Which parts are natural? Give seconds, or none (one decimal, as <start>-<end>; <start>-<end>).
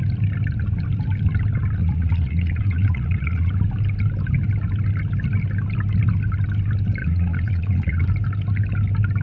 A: 0.0-1.8; 3.5-7.0; 8.1-9.2